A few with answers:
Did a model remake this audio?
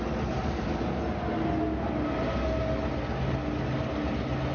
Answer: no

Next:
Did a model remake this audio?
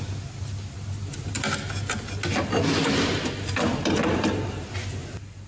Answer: no